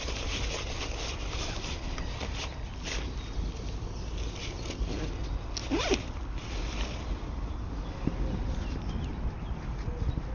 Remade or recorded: recorded